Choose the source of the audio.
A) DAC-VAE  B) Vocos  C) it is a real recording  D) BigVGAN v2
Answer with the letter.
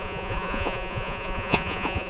B